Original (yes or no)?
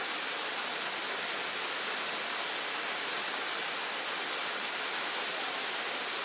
yes